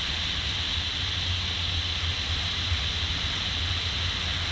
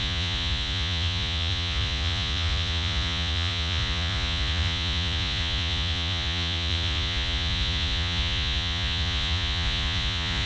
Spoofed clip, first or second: second